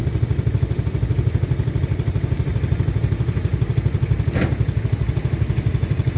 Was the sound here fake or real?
real